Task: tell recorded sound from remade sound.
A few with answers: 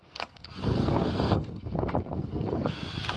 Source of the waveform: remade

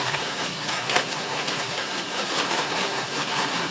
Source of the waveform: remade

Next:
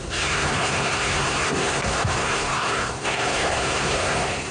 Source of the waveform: remade